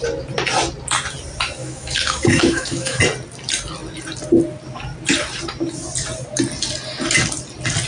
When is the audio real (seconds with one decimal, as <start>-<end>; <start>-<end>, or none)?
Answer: 0.0-1.6; 3.0-7.9